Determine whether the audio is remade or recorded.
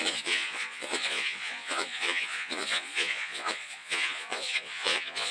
remade